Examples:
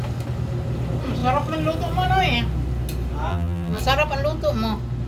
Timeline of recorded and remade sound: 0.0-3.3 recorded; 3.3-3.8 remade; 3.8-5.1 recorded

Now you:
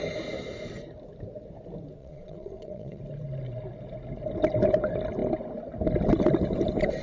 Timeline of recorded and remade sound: 0.0-2.0 recorded; 2.0-3.0 remade; 3.0-7.0 recorded

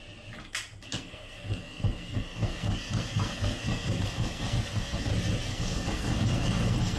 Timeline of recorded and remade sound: 0.0-0.9 recorded; 0.9-5.1 remade; 5.1-5.5 recorded; 5.5-7.0 remade

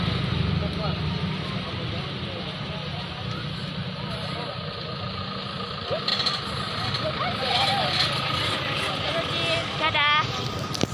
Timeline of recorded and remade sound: 0.0-10.9 recorded

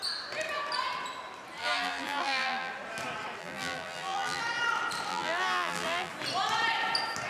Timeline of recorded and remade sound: 0.0-1.6 recorded; 1.6-2.7 remade; 2.7-3.4 recorded; 3.4-4.4 remade; 4.4-5.1 recorded; 5.1-6.1 remade; 6.1-7.3 recorded